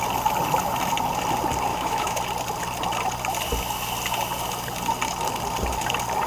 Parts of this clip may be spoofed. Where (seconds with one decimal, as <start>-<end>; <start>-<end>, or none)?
1.7-2.2